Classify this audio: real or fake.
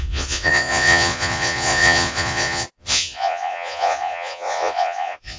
fake